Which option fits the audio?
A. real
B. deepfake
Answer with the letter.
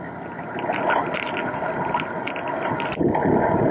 A